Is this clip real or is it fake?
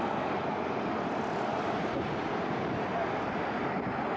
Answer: real